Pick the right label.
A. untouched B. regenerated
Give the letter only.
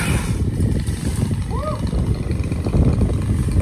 A